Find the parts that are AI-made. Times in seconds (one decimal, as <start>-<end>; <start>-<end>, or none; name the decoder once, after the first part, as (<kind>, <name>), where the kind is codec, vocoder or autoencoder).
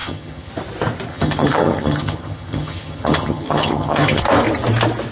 0.0-0.5 (vocoder, HiFi-GAN); 1.1-4.2